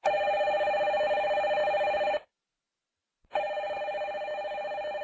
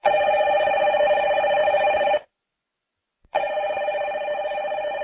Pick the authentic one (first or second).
first